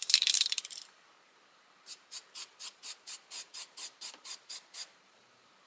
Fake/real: fake